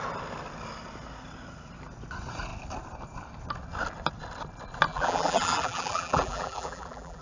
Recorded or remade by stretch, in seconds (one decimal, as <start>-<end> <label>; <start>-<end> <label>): 0.0-4.9 recorded; 4.9-7.2 remade